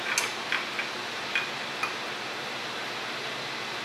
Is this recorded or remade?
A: recorded